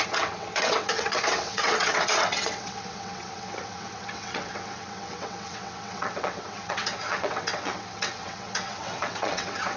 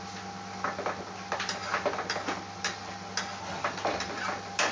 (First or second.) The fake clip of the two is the first